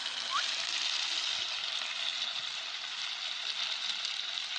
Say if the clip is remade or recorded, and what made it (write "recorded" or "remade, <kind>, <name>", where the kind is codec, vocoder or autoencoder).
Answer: recorded